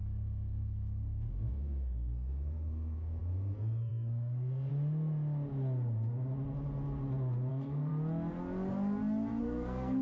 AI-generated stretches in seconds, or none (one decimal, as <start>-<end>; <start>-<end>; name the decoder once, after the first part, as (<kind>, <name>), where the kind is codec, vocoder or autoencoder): 0.0-4.7 (codec, SNAC); 7.5-7.9; 9.4-10.0